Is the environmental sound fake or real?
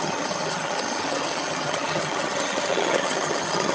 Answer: fake